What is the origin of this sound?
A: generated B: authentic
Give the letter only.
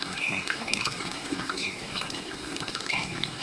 A